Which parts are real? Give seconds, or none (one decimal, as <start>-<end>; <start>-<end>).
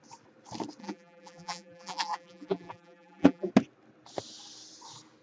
0.0-0.8; 3.5-5.2